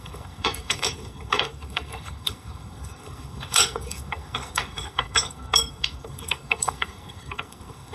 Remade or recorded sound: remade